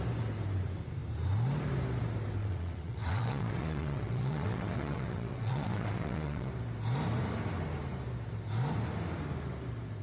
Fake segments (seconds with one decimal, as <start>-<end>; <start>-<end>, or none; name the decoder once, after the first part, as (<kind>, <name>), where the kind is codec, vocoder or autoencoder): 2.4-6.5 (vocoder, WaveNeXt)